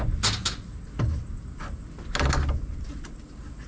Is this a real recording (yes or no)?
yes